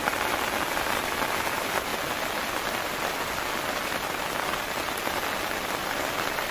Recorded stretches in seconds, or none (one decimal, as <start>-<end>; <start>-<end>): 0.0-6.5